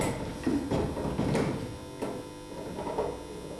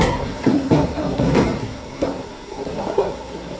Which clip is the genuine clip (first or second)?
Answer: first